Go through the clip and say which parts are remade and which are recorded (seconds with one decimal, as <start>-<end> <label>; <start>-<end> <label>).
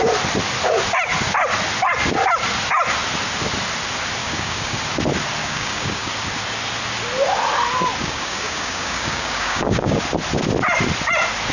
0.0-4.2 recorded; 4.2-4.8 remade; 4.8-5.4 recorded; 5.4-6.1 remade; 6.1-8.0 recorded; 8.0-10.0 remade; 10.0-11.5 recorded